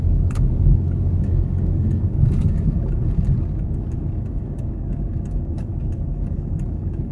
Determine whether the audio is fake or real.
fake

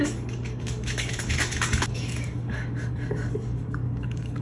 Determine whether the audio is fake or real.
fake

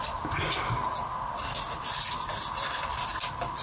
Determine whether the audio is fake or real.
real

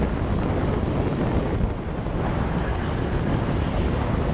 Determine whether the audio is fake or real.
real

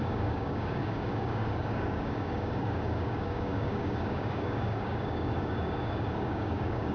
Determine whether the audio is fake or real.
fake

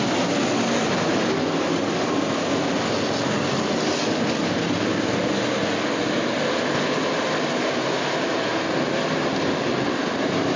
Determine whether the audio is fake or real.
real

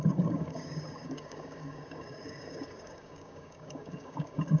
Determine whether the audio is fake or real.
fake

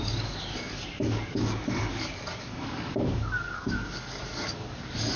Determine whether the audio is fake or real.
fake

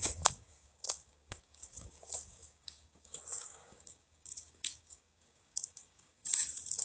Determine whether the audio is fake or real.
fake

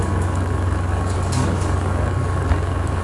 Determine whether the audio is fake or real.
fake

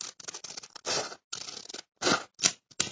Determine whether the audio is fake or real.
real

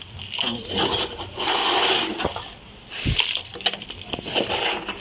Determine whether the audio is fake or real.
real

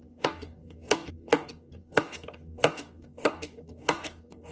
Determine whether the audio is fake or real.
fake